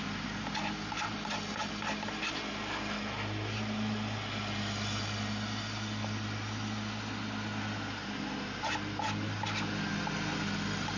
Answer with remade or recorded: recorded